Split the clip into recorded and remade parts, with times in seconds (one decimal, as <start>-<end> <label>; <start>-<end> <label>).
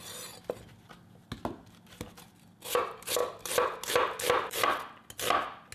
0.0-5.7 recorded